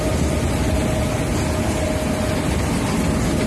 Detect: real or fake real